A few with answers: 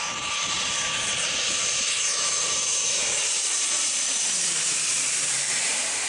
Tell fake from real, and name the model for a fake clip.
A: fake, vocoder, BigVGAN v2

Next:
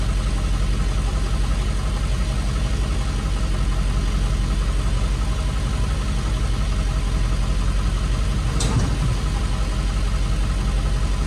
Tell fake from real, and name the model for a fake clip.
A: real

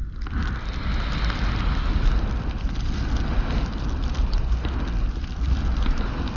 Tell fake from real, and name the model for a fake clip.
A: real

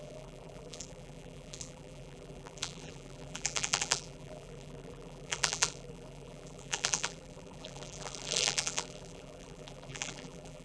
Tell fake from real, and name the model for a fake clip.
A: fake, vocoder, BigVGAN v2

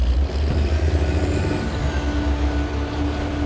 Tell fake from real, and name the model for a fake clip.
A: real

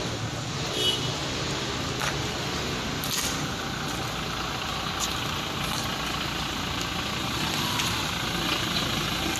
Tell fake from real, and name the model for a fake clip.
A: real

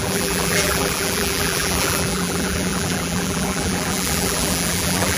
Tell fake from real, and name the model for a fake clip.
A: fake, vocoder, BigVGAN v2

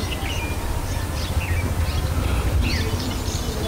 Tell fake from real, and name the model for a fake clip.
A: real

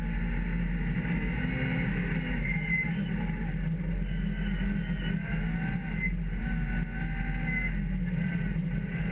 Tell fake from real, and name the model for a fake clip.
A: real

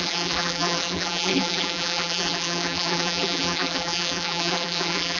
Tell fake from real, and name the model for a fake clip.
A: fake, vocoder, BigVGAN v2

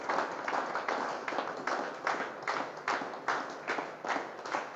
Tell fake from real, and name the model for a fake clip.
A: real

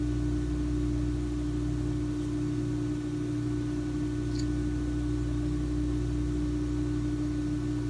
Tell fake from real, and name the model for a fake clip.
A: real